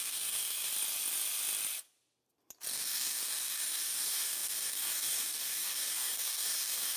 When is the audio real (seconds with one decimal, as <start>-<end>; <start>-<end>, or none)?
0.7-2.7

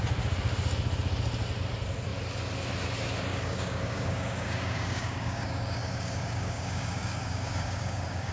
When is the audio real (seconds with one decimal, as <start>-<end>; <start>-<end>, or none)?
0.0-3.3

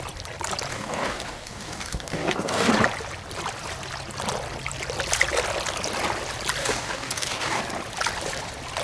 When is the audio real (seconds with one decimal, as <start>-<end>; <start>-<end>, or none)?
0.0-0.7; 2.7-6.6; 7.6-8.8